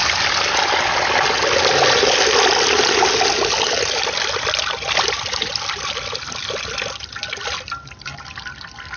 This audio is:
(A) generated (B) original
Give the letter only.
B